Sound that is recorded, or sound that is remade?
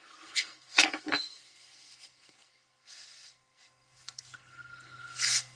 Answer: remade